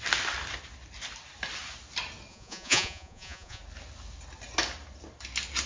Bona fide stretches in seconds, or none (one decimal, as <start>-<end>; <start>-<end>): 0.0-2.3; 3.6-5.7